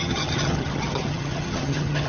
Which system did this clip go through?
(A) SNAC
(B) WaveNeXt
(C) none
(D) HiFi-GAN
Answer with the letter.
D